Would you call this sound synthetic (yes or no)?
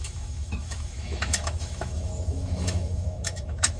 yes